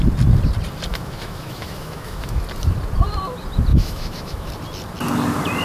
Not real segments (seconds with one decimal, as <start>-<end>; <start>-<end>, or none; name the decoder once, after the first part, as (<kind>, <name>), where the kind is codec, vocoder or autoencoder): 0.9-2.4 (autoencoder, DAC-VAE); 3.7-4.5